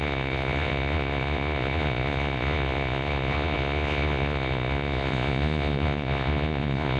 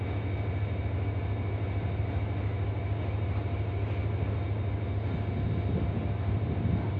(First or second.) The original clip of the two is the second